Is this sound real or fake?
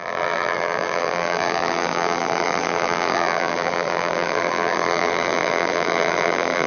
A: fake